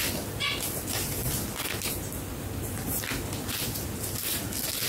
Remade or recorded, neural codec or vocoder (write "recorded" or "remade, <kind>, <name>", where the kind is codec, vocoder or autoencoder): recorded